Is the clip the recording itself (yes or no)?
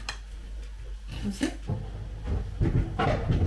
yes